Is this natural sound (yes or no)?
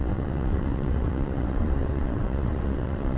no